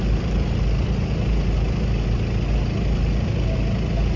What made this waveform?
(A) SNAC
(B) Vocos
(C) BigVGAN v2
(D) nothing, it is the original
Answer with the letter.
D